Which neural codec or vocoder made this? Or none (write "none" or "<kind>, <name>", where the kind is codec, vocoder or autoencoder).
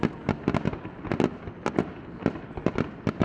none